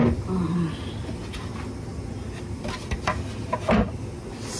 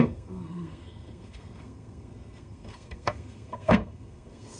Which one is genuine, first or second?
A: first